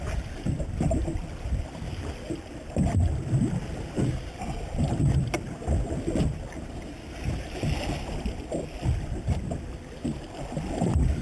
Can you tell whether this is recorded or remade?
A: recorded